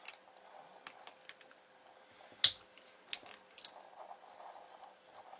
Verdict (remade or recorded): recorded